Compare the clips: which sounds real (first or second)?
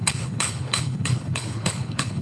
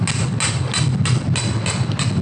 second